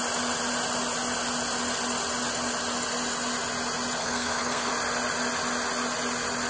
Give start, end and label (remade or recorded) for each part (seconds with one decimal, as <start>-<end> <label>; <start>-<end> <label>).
0.0-4.0 recorded; 4.0-4.7 remade; 4.7-6.5 recorded